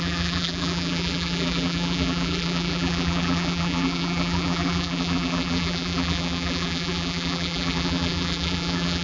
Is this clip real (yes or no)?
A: no